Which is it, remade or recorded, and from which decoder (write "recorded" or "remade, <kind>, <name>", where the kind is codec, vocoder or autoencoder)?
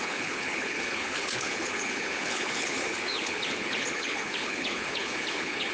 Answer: remade, codec, HILCodec